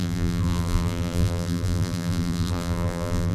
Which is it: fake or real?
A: fake